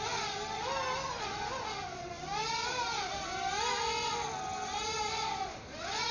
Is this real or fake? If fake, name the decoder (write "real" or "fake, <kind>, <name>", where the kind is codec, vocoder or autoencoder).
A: real